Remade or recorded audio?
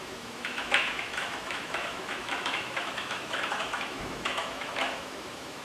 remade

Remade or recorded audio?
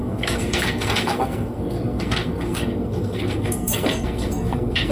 remade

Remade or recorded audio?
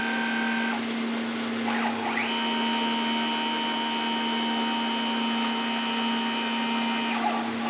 recorded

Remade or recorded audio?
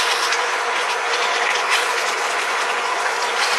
remade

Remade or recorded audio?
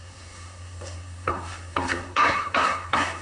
remade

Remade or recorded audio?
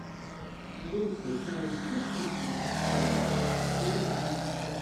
recorded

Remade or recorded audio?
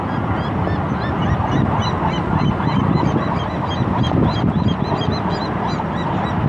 recorded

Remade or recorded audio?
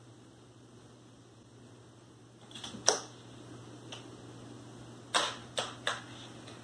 recorded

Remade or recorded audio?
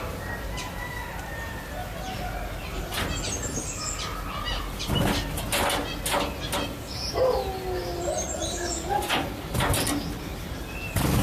recorded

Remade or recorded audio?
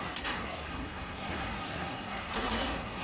remade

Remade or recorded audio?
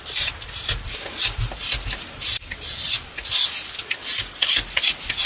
recorded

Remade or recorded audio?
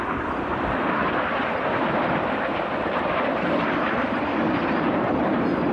remade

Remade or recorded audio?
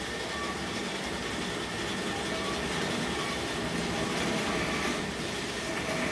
recorded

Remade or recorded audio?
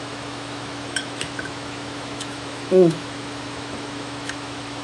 remade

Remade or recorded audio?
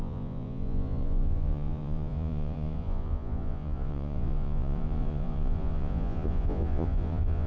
remade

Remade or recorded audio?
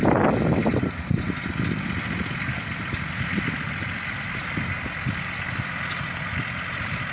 recorded